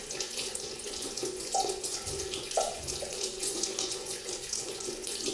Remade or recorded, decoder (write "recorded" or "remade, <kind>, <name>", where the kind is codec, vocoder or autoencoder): remade, vocoder, Vocos